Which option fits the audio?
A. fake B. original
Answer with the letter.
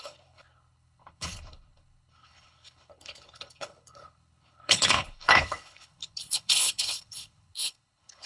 A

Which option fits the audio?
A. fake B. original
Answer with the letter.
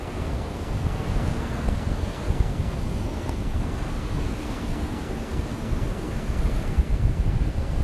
A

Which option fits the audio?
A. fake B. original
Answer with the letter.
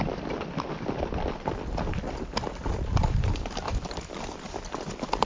A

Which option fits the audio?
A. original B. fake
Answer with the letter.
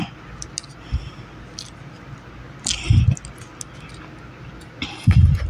A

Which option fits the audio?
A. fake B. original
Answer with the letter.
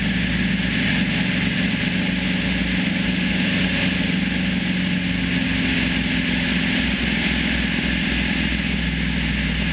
B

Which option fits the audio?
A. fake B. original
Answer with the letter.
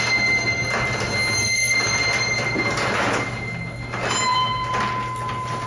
B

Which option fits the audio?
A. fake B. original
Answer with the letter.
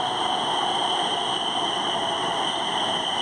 B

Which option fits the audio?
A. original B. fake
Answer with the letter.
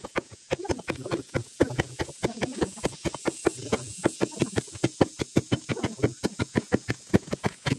B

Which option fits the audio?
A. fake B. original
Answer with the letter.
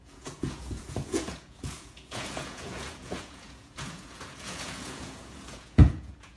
A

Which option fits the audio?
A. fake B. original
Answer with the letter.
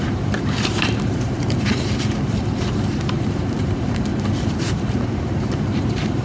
A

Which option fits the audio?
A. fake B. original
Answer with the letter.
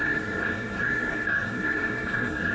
A